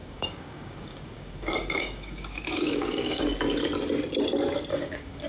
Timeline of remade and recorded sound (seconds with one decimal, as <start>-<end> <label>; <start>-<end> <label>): 0.0-3.2 remade; 3.2-4.7 recorded; 4.7-5.3 remade